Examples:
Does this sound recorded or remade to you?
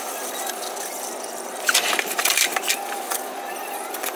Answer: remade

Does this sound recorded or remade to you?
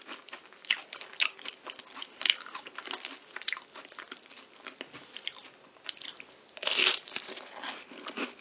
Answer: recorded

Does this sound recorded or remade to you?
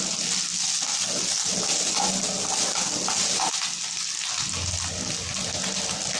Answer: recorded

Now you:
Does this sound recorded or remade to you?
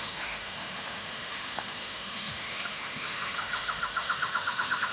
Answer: remade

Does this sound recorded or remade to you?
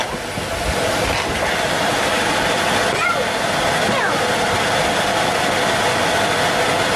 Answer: recorded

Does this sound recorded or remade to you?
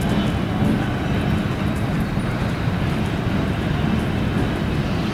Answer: recorded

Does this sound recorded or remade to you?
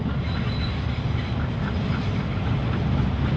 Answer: recorded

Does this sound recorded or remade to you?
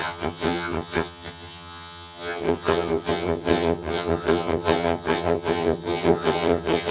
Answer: remade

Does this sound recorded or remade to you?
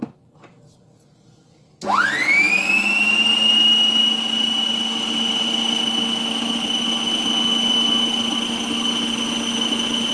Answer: recorded